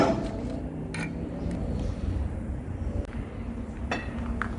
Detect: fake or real real